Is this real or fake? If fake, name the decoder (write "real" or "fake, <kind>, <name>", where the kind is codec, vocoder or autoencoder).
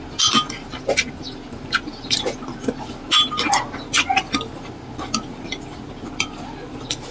real